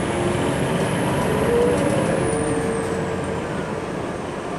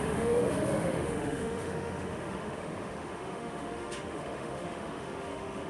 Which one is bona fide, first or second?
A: first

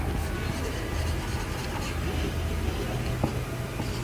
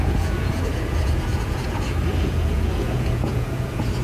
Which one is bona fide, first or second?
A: first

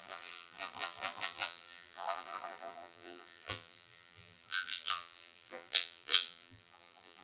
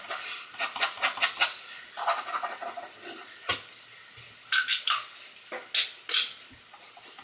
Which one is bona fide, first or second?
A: second